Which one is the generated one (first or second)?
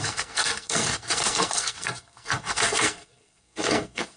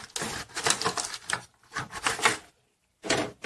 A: first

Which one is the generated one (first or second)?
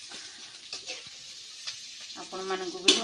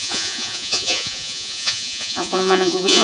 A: second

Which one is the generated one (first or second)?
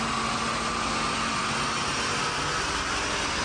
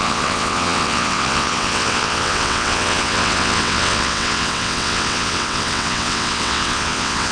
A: second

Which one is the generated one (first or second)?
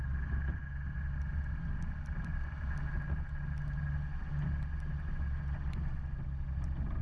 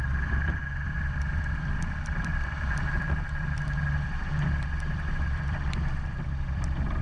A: second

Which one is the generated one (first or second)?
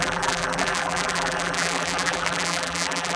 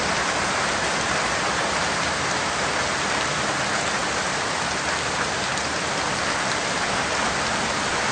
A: first